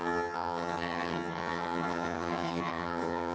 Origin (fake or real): fake